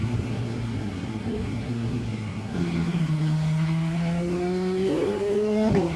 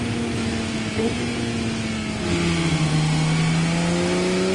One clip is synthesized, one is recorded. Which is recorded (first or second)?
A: second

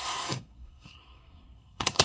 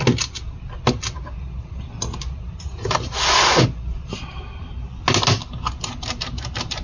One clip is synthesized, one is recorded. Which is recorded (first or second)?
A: second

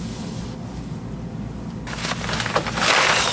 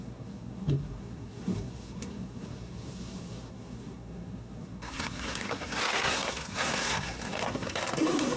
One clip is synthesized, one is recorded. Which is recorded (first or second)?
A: first